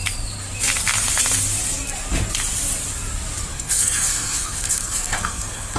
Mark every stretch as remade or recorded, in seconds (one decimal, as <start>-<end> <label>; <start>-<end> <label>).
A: 0.0-3.5 recorded; 3.5-5.8 remade